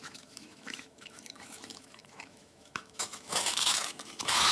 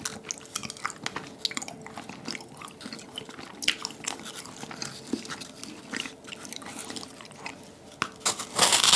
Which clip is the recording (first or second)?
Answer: second